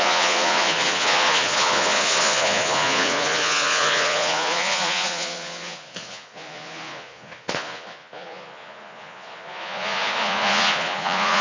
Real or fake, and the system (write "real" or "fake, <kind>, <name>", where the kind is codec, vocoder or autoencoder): fake, vocoder, Vocos